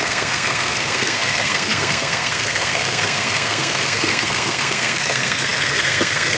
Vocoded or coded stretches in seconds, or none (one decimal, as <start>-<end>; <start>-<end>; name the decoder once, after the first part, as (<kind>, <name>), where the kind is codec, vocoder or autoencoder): 0.0-6.4 (codec, SNAC)